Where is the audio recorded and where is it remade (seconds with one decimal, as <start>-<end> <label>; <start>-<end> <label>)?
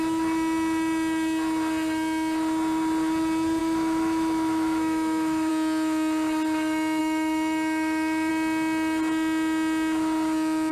0.0-3.6 recorded; 3.6-5.5 remade; 5.5-7.0 recorded; 7.0-8.3 remade; 8.3-10.7 recorded